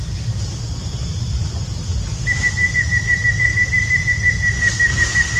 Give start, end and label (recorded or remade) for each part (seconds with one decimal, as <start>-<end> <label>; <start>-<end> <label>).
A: 0.0-5.4 recorded

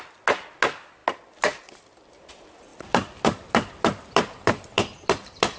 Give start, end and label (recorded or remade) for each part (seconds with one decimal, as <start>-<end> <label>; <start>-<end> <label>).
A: 0.0-2.7 recorded; 2.7-5.6 remade

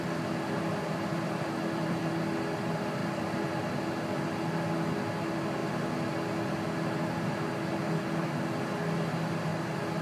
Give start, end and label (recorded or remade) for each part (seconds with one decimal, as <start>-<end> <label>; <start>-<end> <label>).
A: 0.0-1.1 recorded; 1.1-2.1 remade; 2.1-3.0 recorded; 3.0-3.6 remade; 3.6-10.0 recorded